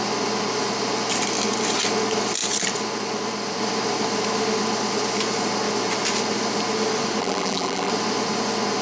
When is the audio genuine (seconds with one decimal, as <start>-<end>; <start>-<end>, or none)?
0.0-7.2; 7.9-8.8